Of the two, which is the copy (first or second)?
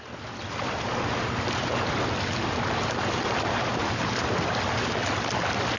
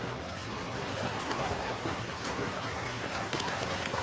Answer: second